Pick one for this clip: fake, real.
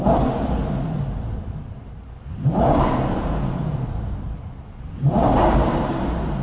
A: fake